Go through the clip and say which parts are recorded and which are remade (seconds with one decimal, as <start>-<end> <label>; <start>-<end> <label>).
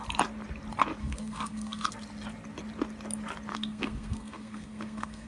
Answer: 0.0-1.0 recorded; 1.0-1.9 remade; 1.9-3.5 recorded; 3.5-5.3 remade